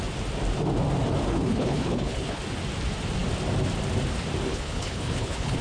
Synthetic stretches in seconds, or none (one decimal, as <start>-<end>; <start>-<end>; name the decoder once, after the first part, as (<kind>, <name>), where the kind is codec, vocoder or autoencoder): 1.3-2.4 (codec, HILCodec); 4.5-5.6